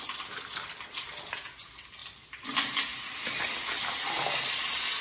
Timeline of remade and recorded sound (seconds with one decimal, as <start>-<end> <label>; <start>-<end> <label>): 0.0-5.0 recorded